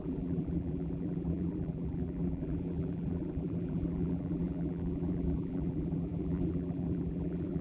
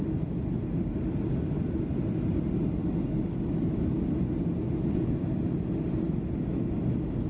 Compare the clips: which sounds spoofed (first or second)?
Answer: first